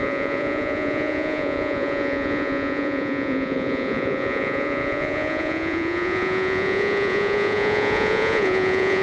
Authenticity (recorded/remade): remade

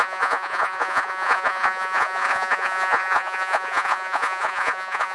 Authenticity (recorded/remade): remade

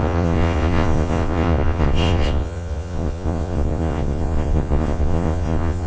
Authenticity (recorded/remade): remade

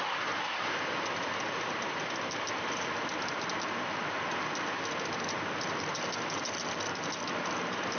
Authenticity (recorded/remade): recorded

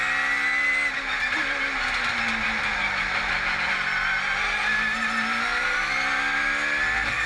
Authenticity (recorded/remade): recorded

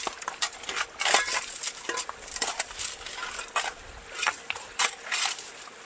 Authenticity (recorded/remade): recorded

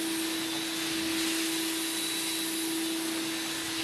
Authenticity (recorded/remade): recorded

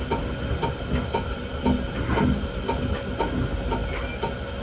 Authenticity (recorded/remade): recorded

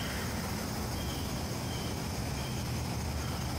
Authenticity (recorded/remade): recorded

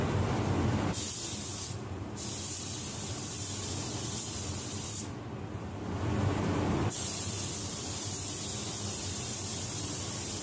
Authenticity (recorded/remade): recorded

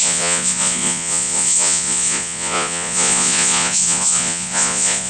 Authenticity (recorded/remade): remade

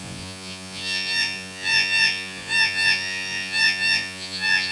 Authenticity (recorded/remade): remade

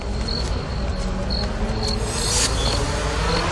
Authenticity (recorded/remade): recorded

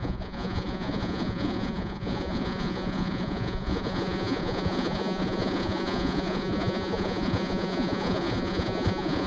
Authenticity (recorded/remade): remade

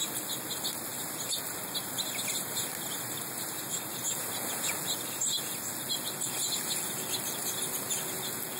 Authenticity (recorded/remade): recorded